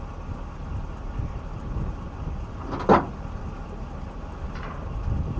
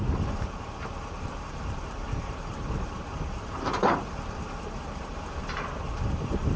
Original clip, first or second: first